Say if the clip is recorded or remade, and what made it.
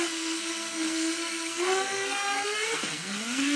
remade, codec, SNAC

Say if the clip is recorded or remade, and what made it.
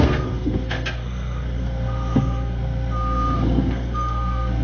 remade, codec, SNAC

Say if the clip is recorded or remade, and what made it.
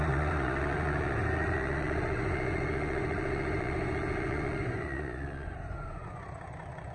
remade, vocoder, Vocos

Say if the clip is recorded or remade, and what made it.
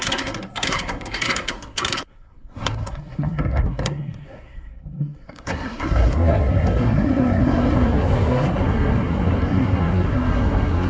remade, codec, SNAC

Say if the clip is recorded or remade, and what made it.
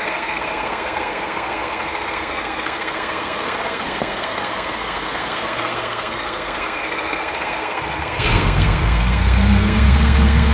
remade, codec, SNAC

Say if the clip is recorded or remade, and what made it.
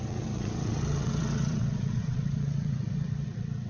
remade, vocoder, WaveNeXt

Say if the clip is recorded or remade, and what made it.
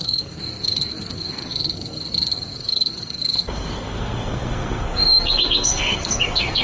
remade, codec, SNAC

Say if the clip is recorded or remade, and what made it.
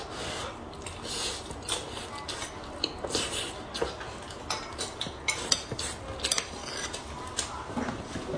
recorded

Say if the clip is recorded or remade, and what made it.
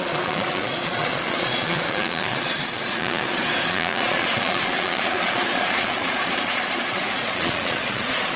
remade, vocoder, Vocos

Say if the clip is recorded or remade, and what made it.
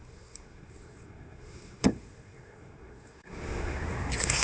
remade, codec, SNAC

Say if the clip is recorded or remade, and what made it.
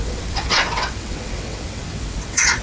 remade, vocoder, WaveNeXt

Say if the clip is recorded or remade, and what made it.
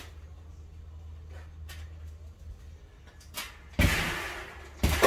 recorded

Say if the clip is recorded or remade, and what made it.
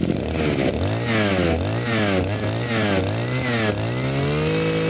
recorded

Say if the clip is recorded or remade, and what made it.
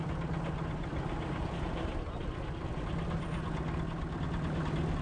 recorded